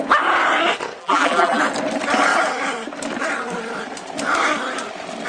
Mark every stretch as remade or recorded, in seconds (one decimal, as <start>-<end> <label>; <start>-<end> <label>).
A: 0.0-1.0 recorded; 1.0-1.6 remade; 1.6-5.3 recorded